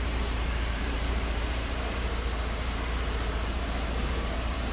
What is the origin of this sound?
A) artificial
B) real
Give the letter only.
A